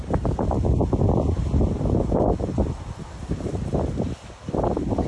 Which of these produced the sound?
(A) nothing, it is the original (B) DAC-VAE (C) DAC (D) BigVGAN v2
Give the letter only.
A